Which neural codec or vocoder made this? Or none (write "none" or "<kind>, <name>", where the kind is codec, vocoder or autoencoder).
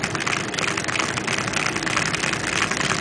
none